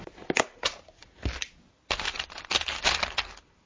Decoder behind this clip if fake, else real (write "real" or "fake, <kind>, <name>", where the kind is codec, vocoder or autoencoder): real